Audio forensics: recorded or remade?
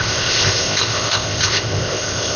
remade